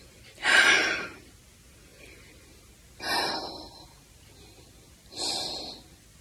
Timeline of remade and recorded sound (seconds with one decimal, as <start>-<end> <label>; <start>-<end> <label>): 0.0-6.2 recorded